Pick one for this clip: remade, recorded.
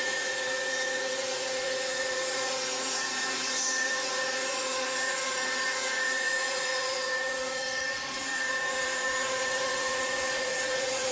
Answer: remade